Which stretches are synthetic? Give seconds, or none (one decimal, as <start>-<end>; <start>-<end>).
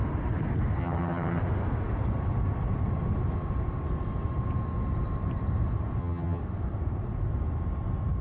0.8-1.4; 6.0-6.4